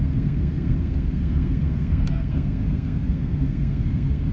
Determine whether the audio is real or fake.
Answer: fake